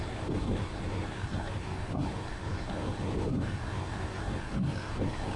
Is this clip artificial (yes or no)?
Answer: yes